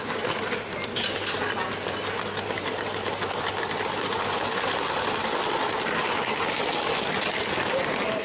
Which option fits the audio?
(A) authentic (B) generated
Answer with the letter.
A